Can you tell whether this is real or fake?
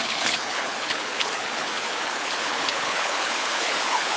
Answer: fake